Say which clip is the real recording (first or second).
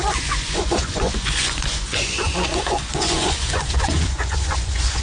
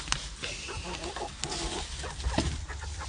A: second